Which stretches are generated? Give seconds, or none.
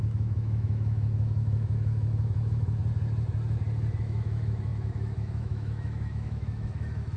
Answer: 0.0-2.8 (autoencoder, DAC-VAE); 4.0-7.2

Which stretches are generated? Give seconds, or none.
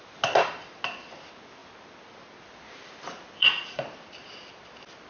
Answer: none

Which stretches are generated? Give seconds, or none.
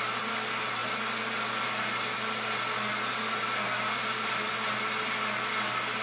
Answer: none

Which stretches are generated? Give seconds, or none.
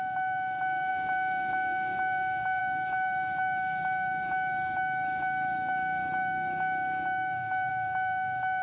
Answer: 2.6-7.7 (autoencoder, DAC-VAE)